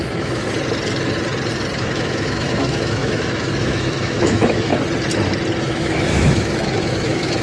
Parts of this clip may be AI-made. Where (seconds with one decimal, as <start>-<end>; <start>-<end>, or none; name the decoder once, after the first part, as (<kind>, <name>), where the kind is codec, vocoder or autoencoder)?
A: 0.0-0.4 (autoencoder, DAC-VAE); 1.8-4.7; 5.6-7.4